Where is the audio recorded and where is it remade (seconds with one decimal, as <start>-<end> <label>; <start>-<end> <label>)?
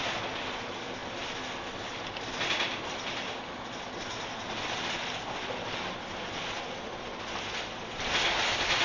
0.0-8.8 recorded